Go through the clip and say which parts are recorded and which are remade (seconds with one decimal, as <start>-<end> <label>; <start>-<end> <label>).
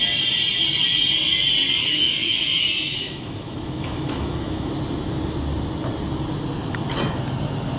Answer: 0.0-1.8 recorded; 1.8-4.7 remade; 4.7-7.8 recorded